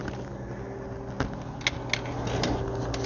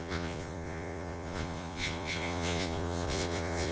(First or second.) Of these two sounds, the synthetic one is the second